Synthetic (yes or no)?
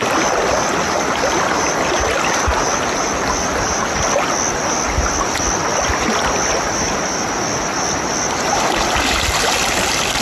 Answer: no